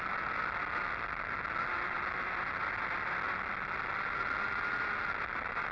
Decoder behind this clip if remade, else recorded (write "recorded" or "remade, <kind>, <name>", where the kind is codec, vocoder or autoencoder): recorded